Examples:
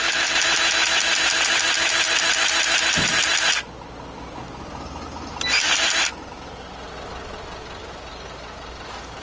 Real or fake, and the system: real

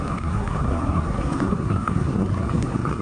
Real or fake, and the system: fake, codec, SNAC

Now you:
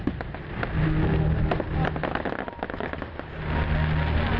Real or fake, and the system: real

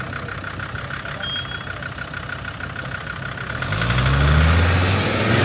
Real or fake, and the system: real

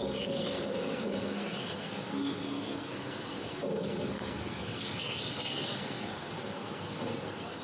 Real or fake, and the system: fake, codec, SNAC